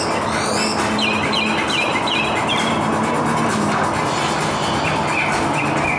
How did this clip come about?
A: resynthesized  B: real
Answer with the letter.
B